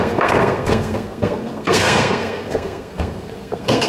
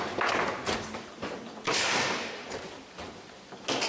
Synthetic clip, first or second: first